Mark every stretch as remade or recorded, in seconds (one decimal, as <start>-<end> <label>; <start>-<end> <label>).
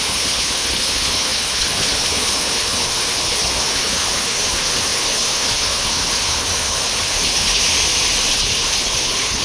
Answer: 0.0-7.6 remade; 7.6-8.3 recorded; 8.3-9.4 remade